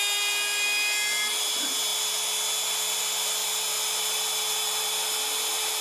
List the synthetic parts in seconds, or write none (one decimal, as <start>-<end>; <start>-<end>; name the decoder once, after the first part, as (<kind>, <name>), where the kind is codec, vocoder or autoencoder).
none